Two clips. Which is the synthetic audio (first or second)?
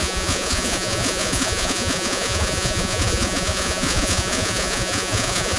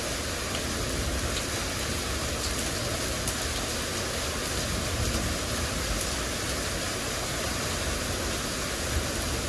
first